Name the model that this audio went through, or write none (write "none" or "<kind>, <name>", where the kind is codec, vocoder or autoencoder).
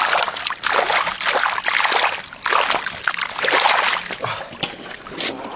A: none